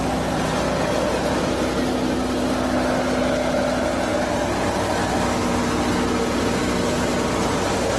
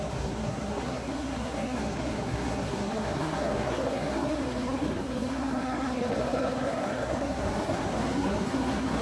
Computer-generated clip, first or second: second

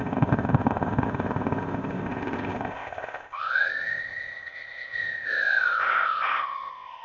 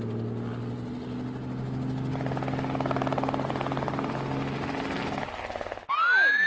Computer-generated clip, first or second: first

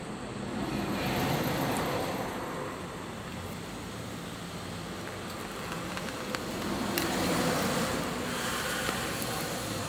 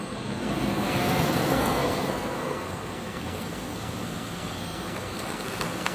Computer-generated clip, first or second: second